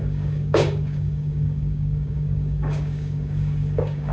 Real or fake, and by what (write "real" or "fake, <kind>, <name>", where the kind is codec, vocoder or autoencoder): fake, codec, DAC